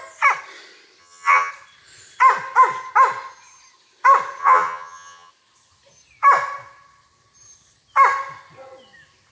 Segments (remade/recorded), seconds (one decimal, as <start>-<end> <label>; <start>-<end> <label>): 0.0-1.0 recorded; 1.0-1.5 remade; 1.5-4.4 recorded; 4.4-5.3 remade; 5.3-9.3 recorded